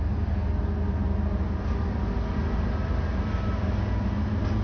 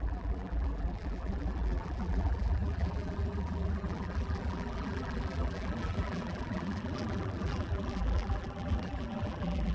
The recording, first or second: first